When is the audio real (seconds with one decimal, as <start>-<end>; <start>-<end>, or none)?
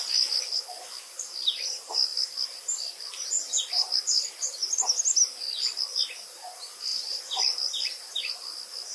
0.0-2.1; 3.3-6.9; 8.2-8.9